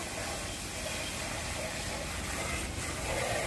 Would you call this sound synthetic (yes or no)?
no